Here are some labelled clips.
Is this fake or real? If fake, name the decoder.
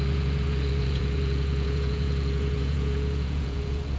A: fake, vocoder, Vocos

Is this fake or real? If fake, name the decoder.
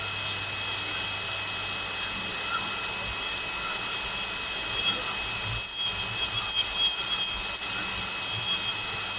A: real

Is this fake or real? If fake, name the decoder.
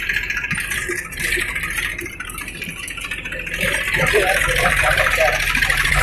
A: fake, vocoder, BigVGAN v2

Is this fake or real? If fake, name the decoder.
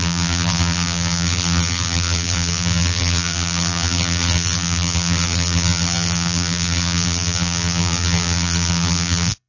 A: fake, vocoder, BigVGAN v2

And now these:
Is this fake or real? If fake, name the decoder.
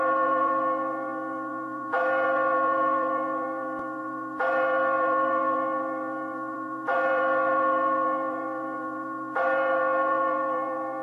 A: fake, vocoder, BigVGAN v2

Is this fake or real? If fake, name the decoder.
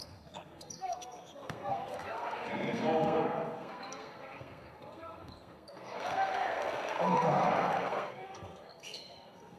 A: fake, codec, SNAC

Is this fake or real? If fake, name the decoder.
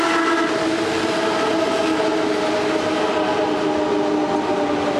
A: real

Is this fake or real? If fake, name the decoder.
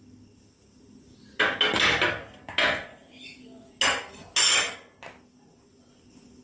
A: real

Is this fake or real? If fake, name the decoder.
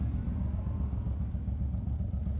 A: real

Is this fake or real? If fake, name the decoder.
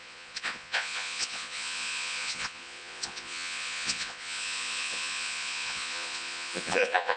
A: fake, vocoder, Vocos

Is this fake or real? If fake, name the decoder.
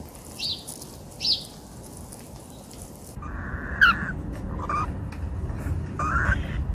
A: real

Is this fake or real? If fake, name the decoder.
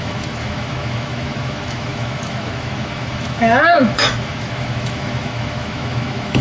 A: fake, autoencoder, DAC-VAE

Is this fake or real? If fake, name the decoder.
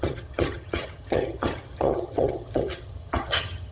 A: fake, vocoder, HiFi-GAN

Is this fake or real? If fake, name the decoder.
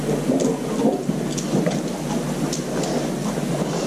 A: real